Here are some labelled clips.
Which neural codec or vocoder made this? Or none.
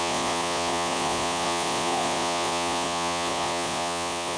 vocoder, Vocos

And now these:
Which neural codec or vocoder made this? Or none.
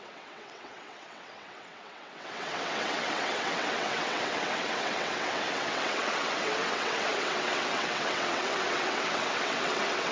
vocoder, WaveNeXt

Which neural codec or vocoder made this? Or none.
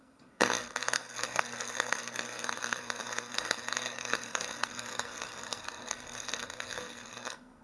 codec, SNAC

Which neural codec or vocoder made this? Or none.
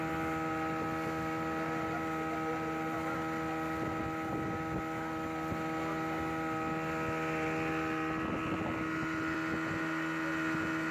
none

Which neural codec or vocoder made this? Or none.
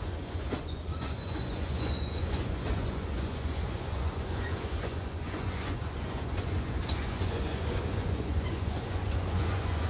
vocoder, Vocos